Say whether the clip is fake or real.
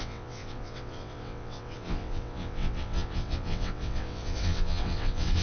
fake